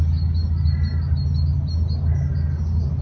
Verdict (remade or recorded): recorded